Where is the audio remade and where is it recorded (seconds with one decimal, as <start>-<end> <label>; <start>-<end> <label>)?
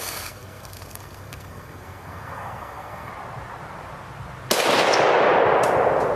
0.0-3.1 remade; 3.1-6.2 recorded